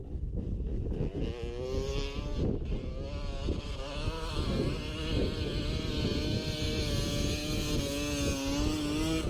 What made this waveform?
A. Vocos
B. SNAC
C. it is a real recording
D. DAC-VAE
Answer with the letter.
C